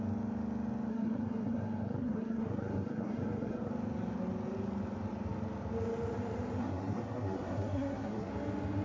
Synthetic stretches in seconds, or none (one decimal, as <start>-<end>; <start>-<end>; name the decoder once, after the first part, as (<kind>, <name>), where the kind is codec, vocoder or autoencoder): 0.9-3.7 (codec, SNAC); 6.6-8.3